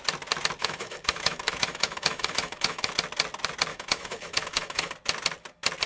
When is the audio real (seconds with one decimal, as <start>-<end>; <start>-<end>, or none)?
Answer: 0.0-0.6; 2.9-3.7; 4.9-5.9